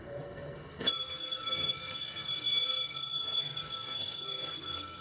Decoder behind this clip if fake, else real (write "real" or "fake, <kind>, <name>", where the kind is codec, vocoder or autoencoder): fake, codec, SNAC